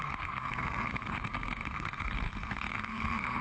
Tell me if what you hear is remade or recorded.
remade